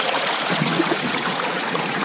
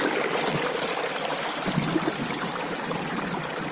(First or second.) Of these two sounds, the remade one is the first